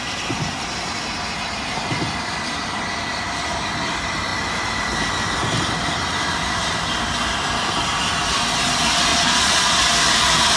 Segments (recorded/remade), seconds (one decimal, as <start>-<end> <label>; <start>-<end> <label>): 0.0-9.1 recorded; 9.1-9.8 remade; 9.8-10.6 recorded

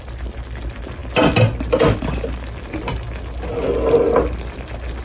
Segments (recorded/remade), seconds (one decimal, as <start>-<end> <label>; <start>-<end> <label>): 0.0-5.0 recorded

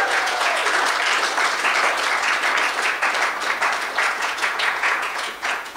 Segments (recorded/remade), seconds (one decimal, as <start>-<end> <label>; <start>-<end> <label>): 0.0-0.6 remade; 0.6-4.1 recorded; 4.1-5.8 remade